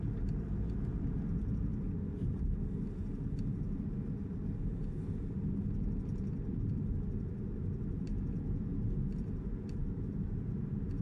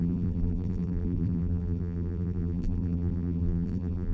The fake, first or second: second